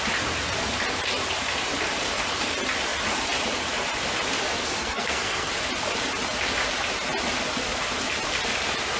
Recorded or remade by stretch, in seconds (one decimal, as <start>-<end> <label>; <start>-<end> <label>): 0.0-4.6 recorded; 4.6-5.5 remade; 5.5-9.0 recorded